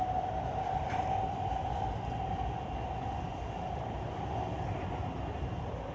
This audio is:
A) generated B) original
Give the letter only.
B